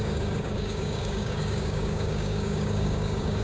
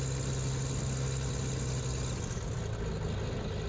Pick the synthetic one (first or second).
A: first